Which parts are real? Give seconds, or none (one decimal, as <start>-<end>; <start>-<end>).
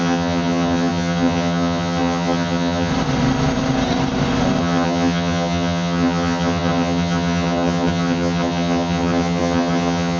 2.9-4.6